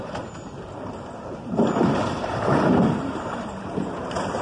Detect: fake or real fake